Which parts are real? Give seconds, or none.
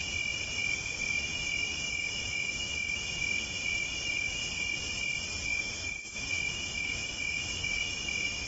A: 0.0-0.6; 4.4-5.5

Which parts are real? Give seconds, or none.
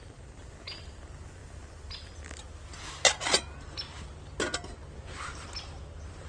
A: 0.0-6.3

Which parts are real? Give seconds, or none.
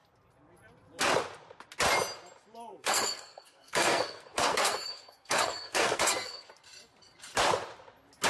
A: 0.0-2.7; 6.5-8.3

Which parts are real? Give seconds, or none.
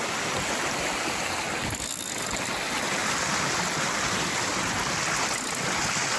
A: 0.0-6.2